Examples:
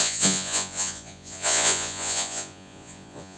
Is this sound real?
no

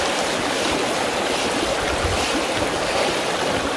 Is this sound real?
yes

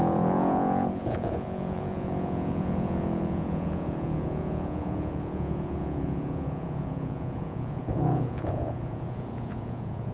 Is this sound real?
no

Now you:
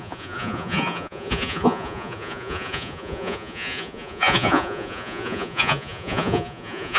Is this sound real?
no